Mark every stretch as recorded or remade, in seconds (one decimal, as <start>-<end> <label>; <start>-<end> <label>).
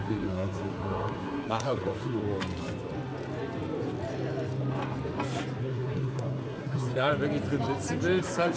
0.0-2.2 remade; 2.2-5.6 recorded; 5.6-7.1 remade; 7.1-8.2 recorded; 8.2-8.6 remade